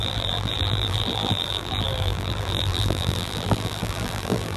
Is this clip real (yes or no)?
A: no